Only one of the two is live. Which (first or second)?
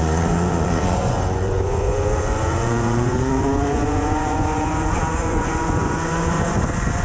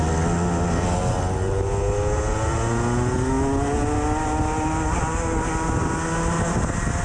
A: second